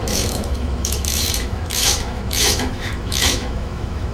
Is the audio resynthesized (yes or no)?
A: yes